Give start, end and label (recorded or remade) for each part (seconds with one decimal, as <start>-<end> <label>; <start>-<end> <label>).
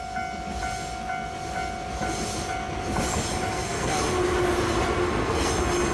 0.0-3.5 recorded; 3.5-4.0 remade; 4.0-5.0 recorded; 5.0-5.5 remade; 5.5-5.9 recorded